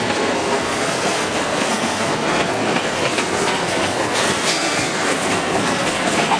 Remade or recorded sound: remade